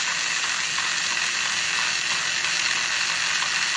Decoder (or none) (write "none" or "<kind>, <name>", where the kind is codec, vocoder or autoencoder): none